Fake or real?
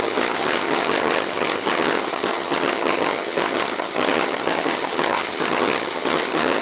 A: fake